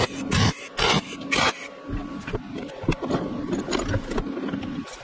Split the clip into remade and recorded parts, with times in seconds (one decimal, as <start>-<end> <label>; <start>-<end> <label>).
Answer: 0.0-5.0 recorded